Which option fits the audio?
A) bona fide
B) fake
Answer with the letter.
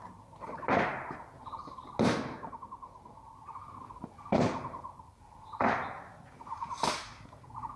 A